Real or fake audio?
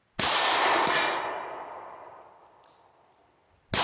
real